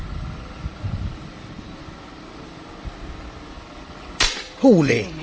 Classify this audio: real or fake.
real